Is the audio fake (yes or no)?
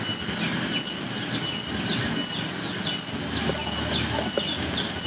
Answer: no